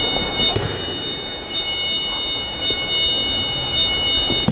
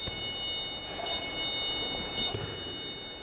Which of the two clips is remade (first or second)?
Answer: first